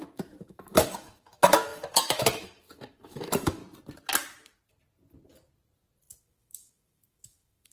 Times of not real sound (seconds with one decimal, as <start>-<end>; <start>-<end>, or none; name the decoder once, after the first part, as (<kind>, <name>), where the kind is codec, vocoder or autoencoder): 0.0-3.6 (autoencoder, DAC-VAE); 6.2-7.7